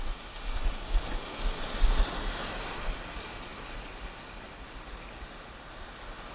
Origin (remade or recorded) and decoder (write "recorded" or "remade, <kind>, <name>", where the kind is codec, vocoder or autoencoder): recorded